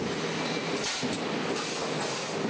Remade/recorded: recorded